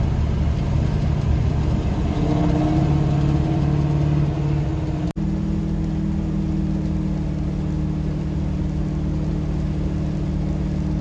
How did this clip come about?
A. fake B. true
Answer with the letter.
B